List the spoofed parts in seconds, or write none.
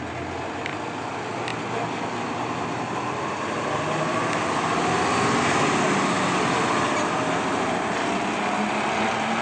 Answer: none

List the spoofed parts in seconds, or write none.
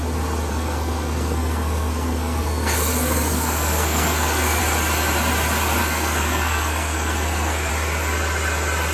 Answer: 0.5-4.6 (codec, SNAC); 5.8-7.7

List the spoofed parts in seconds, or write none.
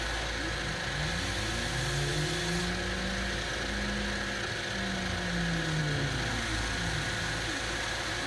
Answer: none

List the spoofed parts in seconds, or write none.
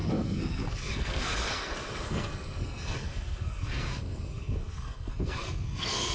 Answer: 0.0-6.1 (codec, SNAC)